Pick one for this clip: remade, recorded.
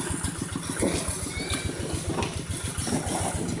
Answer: recorded